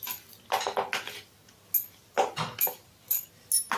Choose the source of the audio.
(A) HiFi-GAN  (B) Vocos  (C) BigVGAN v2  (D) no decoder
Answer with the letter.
D